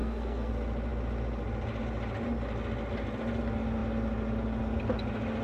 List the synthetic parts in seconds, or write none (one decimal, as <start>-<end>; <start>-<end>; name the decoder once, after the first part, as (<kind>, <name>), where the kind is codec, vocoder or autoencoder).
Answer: 0.0-0.5 (codec, SNAC)